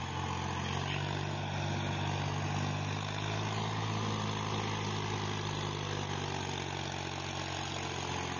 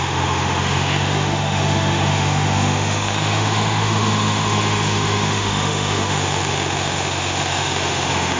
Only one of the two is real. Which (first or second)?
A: first